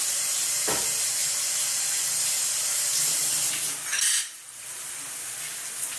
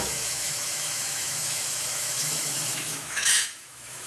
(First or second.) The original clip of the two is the first